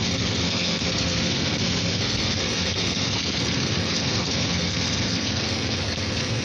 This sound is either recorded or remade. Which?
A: remade